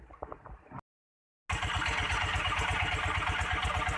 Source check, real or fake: real